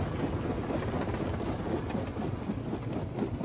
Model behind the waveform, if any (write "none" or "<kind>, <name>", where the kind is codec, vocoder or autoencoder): none